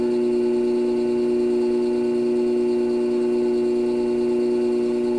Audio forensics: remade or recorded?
recorded